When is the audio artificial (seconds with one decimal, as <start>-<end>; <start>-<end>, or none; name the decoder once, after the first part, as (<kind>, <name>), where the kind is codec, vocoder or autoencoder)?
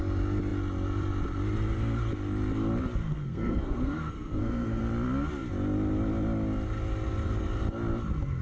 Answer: 3.1-4.8 (codec, SNAC)